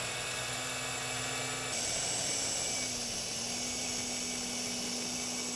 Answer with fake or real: real